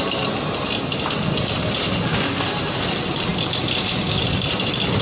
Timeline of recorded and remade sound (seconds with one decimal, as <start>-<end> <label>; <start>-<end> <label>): 0.0-5.0 recorded